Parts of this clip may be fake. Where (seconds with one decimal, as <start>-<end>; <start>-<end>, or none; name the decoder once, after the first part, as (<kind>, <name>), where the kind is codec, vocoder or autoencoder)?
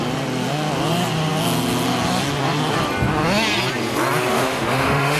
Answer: 4.3-5.2 (autoencoder, DAC-VAE)